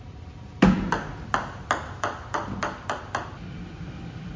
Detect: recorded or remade recorded